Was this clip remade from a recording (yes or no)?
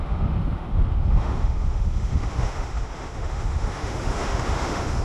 yes